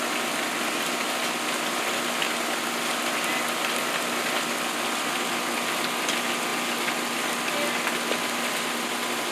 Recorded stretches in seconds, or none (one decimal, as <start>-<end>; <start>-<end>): 0.0-9.3